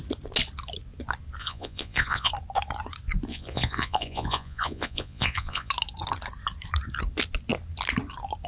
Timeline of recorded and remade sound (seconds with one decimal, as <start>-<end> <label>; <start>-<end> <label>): 0.0-1.4 recorded; 1.4-2.3 remade; 2.3-3.3 recorded; 3.3-5.7 remade; 5.7-8.5 recorded